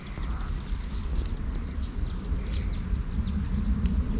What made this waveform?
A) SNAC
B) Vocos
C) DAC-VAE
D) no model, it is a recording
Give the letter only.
D